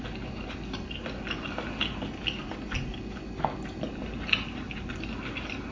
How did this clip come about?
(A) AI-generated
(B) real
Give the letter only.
B